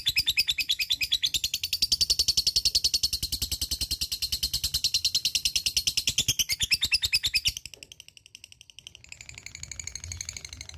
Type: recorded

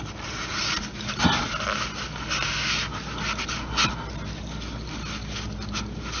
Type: recorded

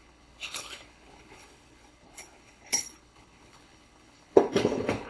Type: remade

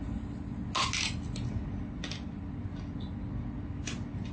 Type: recorded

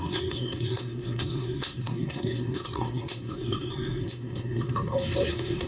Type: remade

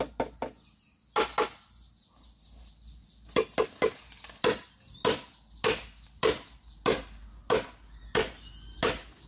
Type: recorded